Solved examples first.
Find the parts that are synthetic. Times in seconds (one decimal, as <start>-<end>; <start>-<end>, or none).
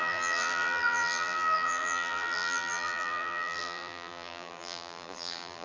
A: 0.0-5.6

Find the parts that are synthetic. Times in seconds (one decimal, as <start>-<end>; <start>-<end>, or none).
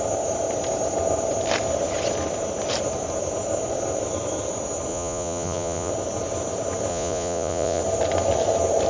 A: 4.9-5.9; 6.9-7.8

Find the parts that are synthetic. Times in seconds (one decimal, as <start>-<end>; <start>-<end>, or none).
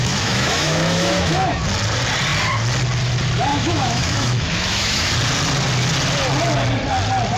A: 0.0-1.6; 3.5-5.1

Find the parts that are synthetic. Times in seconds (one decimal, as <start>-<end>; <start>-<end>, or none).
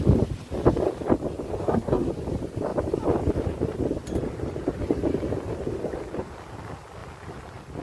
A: 1.6-2.1